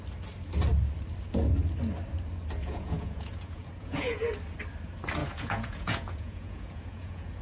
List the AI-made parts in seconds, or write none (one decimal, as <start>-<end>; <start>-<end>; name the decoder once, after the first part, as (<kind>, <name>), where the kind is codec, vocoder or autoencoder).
2.6-4.2 (vocoder, Vocos); 5.2-7.4

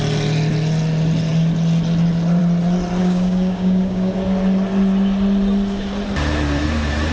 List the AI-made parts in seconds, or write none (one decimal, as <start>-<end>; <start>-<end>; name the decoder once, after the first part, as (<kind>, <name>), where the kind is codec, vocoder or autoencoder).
3.0-4.1 (codec, DAC)